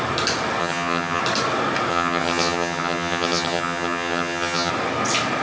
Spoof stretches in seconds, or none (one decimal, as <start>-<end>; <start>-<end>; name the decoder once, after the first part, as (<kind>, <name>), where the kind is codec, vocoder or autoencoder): 0.6-1.2 (vocoder, HiFi-GAN); 1.9-4.7